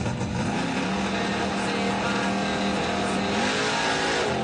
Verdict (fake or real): real